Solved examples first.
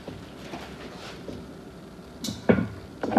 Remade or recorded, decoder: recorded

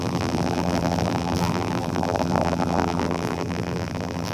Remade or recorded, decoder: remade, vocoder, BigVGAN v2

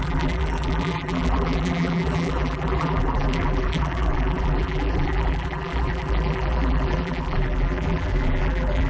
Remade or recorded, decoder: remade, vocoder, BigVGAN v2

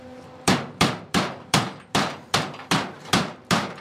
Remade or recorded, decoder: remade, vocoder, BigVGAN v2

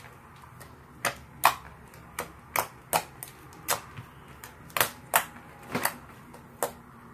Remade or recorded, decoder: recorded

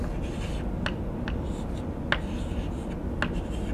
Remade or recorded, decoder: recorded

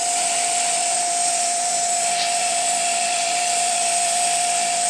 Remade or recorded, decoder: remade, vocoder, BigVGAN v2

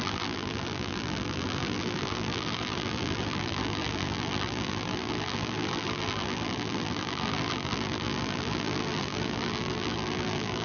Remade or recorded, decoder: remade, vocoder, BigVGAN v2